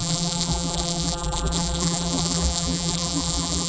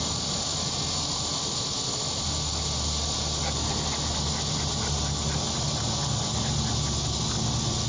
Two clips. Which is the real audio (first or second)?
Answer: second